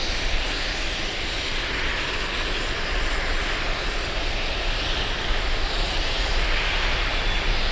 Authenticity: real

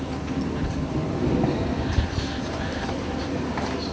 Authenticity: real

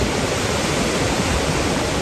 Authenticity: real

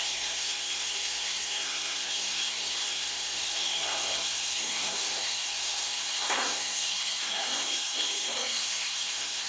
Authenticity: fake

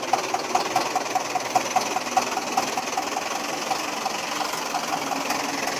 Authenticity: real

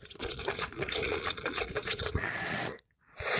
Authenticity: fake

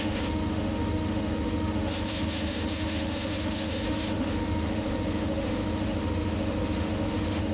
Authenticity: fake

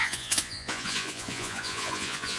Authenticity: fake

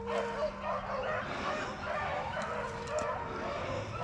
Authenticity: real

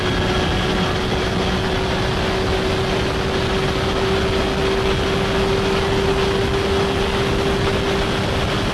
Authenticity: real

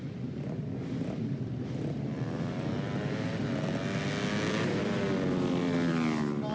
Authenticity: real